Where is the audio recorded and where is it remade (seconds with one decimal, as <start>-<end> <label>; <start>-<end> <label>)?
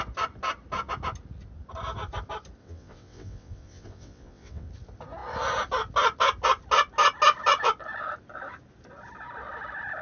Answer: 0.0-2.6 recorded; 2.6-4.7 remade; 4.7-10.0 recorded